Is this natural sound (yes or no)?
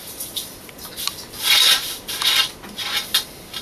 yes